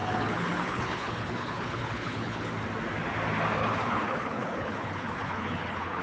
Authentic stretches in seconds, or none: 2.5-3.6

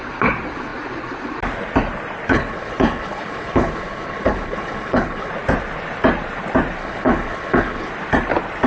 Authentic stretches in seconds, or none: 0.0-2.3; 5.3-6.8; 7.9-8.7

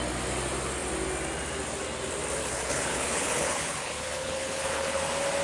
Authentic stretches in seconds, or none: 0.0-2.4; 5.0-5.4

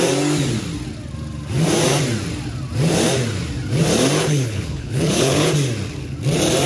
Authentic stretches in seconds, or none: 0.0-4.2; 5.5-6.7

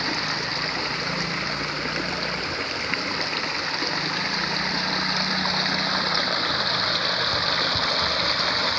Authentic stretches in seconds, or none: 0.0-8.8

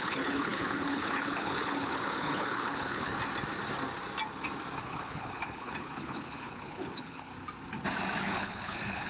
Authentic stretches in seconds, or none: 3.1-4.8; 7.3-8.2

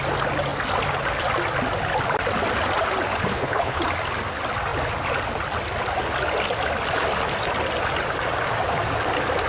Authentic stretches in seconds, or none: 0.0-3.3; 3.8-9.5

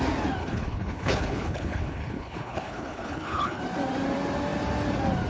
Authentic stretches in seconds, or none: 0.0-0.4; 3.6-5.3